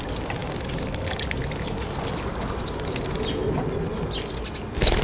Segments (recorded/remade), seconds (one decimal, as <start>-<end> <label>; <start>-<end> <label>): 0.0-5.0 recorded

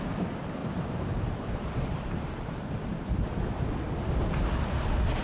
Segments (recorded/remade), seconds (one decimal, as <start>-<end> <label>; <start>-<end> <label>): 0.0-0.6 recorded; 0.6-3.7 remade; 3.7-5.2 recorded

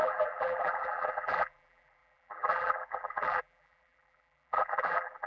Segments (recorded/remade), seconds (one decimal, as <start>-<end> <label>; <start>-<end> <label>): 0.0-5.3 remade